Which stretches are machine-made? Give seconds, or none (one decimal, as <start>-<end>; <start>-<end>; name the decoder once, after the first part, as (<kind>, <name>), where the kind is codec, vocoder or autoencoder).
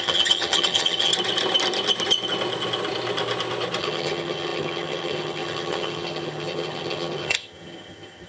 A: 0.0-1.1 (vocoder, HiFi-GAN); 3.8-8.3